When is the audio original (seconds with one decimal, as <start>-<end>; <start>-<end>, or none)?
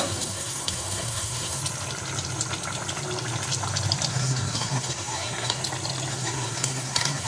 1.6-4.1; 5.6-6.1